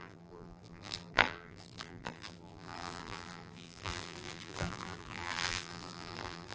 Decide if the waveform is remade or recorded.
remade